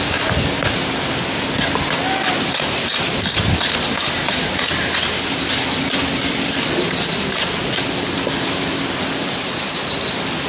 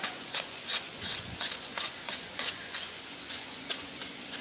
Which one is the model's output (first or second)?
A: second